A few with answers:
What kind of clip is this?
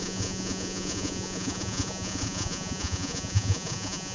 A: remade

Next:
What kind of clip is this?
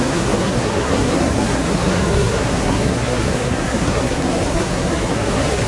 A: remade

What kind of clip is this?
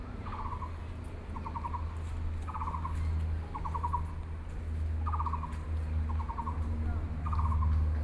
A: recorded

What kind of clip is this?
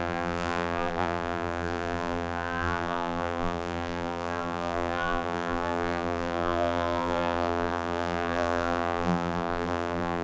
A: remade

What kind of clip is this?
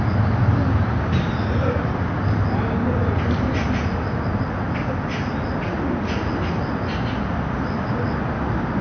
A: recorded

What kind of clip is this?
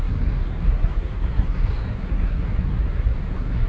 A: remade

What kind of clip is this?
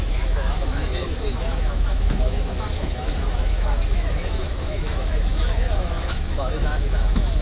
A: remade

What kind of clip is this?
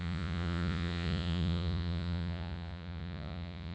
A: remade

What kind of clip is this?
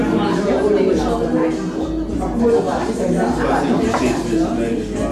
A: recorded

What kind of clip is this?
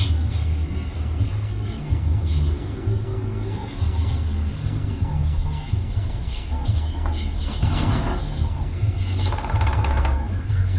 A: remade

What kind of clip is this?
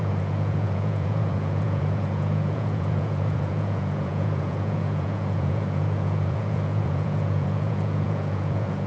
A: remade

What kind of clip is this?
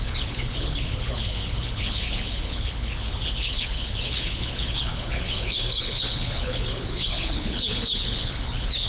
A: remade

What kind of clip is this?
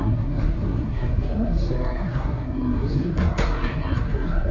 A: remade